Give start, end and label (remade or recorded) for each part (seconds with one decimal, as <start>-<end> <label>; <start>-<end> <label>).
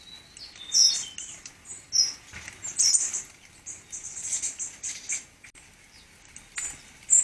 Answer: 0.0-7.2 recorded